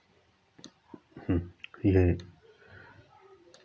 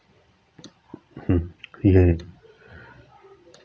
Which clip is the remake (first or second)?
second